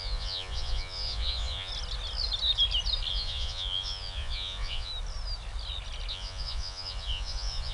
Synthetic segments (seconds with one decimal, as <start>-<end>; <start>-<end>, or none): 0.0-1.7; 3.1-4.9; 6.1-7.7